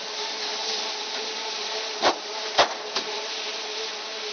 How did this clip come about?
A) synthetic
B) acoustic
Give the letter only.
A